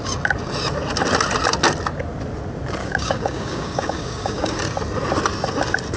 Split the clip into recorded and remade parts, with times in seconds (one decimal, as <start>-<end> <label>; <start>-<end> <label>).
0.0-2.8 recorded; 2.8-4.6 remade; 4.6-6.0 recorded